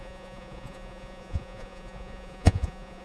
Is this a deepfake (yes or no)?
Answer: yes